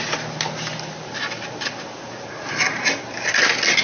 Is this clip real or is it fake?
real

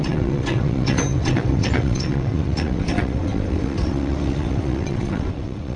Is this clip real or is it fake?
fake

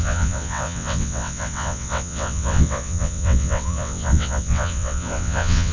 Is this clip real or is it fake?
fake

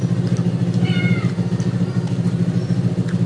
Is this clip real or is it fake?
real